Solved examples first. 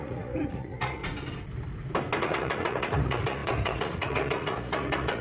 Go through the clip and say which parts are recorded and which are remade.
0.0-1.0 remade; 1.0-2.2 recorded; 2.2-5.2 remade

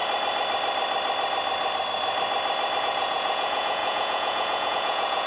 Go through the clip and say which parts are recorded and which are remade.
0.0-2.8 recorded; 2.8-5.3 remade

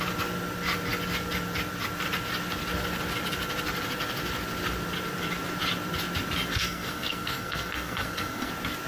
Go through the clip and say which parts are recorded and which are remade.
0.0-6.5 recorded; 6.5-8.5 remade; 8.5-8.9 recorded

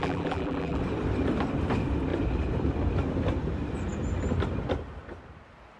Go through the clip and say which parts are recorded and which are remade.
0.0-0.8 remade; 0.8-5.8 recorded

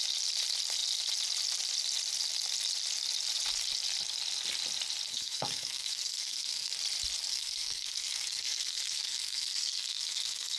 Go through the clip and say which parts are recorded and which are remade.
0.0-5.1 recorded; 5.1-6.7 remade; 6.7-7.3 recorded; 7.3-10.6 remade

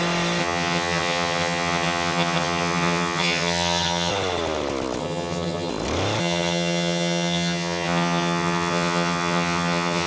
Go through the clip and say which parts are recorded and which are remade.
0.0-0.4 recorded; 0.4-4.1 remade; 4.1-5.0 recorded; 5.0-5.7 remade; 5.7-6.2 recorded; 6.2-10.1 remade